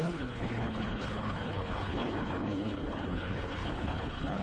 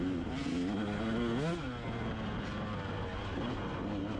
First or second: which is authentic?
second